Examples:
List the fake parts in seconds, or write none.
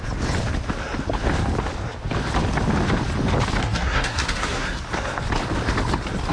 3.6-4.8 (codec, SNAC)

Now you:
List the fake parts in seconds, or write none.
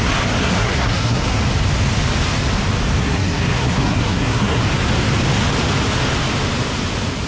0.4-1.4 (codec, SNAC); 3.0-4.6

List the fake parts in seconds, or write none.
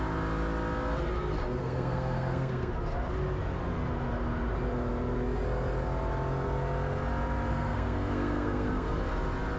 1.6-2.7 (codec, SNAC); 7.5-8.9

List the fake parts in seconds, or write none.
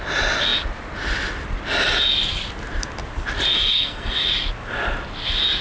3.5-4.3 (codec, SNAC)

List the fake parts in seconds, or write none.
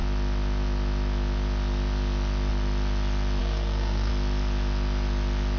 3.4-4.1 (codec, SNAC)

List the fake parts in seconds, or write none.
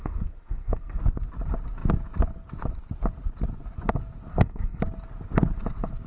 0.0-1.0 (codec, SNAC); 4.3-4.8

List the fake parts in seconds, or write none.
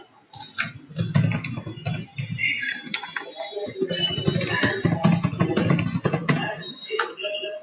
none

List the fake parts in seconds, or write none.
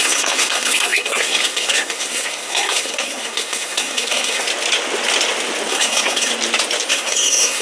0.0-4.5 (codec, SNAC); 5.7-6.3; 6.9-7.6